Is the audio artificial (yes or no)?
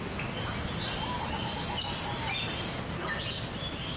no